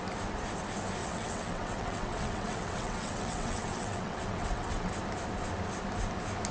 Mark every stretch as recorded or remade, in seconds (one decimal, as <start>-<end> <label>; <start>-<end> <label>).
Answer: 0.0-1.0 recorded; 1.0-4.9 remade; 4.9-6.5 recorded